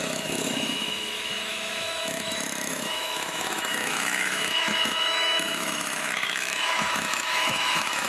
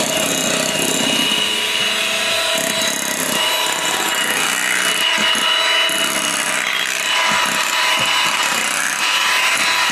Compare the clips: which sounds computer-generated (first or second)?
first